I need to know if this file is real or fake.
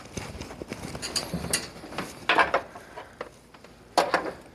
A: real